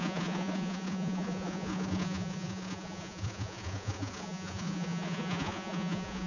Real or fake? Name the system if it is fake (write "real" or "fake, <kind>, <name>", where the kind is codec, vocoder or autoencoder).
fake, vocoder, Vocos